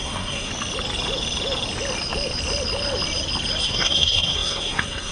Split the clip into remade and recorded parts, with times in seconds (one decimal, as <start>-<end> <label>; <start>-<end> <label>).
0.0-0.5 remade; 0.5-3.6 recorded; 3.6-5.1 remade